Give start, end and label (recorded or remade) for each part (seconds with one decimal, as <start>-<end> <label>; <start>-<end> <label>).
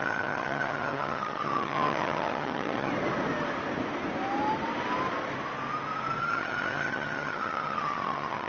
0.0-2.9 remade; 2.9-6.2 recorded; 6.2-8.5 remade